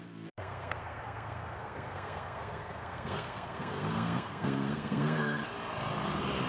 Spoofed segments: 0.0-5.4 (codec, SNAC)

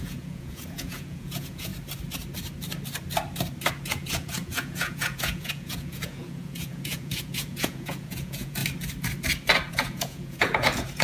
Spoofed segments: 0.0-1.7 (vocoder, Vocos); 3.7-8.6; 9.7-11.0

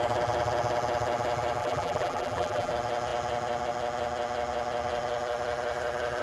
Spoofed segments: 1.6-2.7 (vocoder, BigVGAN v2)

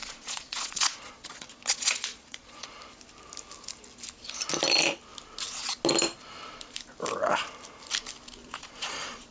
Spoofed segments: 0.0-2.8 (vocoder, Vocos); 8.4-9.3